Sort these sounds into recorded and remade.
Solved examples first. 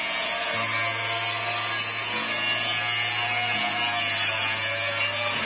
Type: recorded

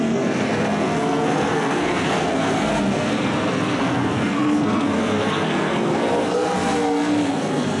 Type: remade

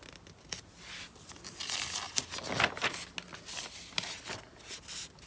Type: recorded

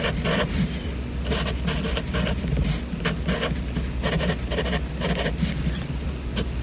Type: recorded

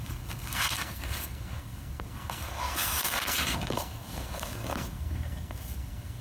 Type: remade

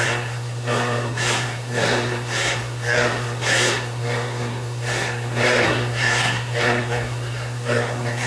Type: remade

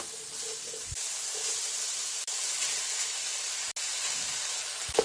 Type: recorded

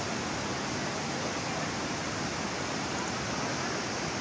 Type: recorded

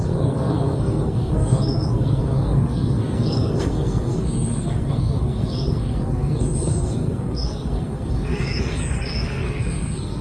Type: remade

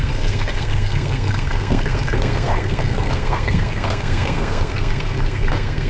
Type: remade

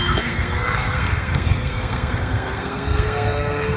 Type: remade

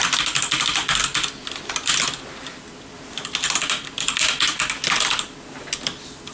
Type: recorded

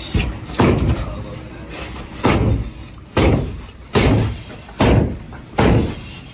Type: recorded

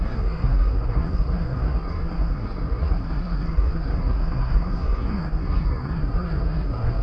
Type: remade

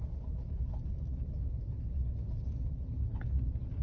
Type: recorded